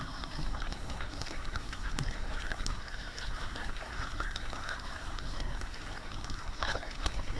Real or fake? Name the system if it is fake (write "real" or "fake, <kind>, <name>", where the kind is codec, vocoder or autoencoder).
fake, codec, SNAC